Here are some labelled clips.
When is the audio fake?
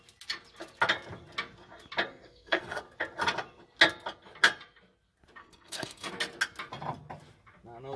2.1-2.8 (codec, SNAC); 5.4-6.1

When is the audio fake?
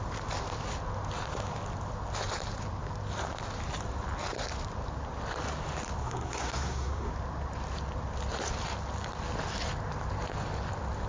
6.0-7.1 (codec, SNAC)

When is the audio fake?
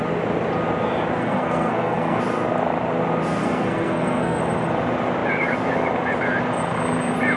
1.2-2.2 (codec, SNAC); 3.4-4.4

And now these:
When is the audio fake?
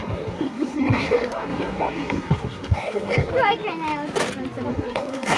0.0-3.3 (codec, SNAC); 4.7-5.4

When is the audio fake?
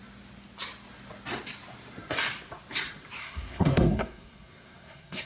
3.2-5.3 (codec, SNAC)